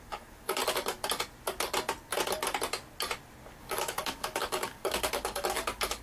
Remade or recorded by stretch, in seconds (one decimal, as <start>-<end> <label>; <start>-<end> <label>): 0.0-0.6 remade; 0.6-3.6 recorded; 3.6-6.0 remade

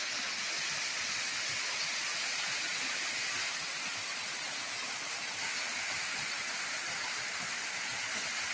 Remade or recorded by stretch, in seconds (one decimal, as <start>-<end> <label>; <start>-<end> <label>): 0.0-8.5 recorded